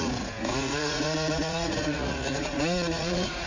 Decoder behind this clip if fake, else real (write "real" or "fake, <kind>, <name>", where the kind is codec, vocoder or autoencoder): fake, vocoder, Vocos